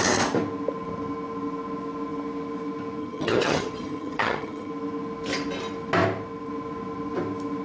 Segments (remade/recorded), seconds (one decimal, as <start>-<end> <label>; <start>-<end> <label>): 0.0-3.0 recorded; 3.0-4.7 remade; 4.7-7.6 recorded